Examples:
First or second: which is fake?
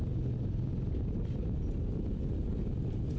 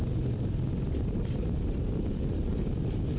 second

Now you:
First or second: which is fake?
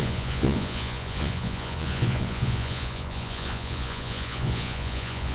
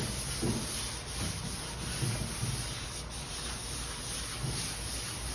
first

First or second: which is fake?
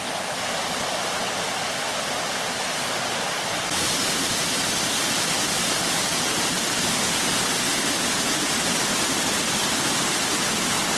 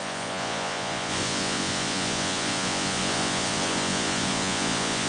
second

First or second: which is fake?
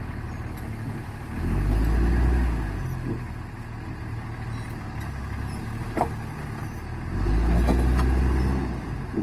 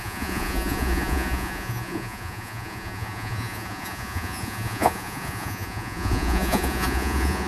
second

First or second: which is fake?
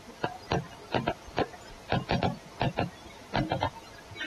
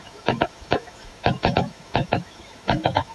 second